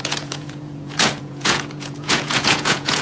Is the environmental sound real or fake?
fake